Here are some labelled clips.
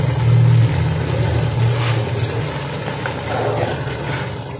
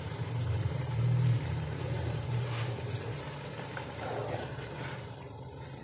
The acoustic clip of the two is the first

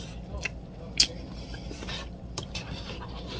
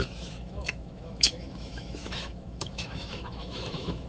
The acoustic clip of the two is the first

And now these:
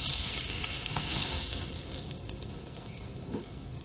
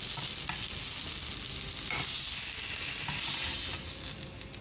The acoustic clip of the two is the second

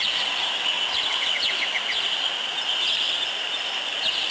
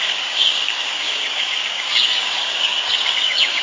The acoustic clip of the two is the first